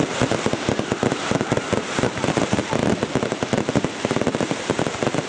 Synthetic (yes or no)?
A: yes